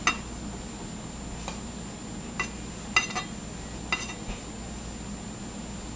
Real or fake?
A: real